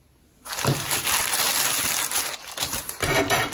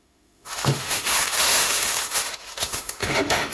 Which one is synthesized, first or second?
second